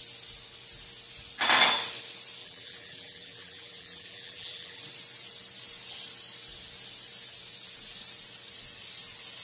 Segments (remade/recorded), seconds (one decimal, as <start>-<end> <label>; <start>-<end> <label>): 0.0-2.4 recorded; 2.4-4.8 remade; 4.8-9.4 recorded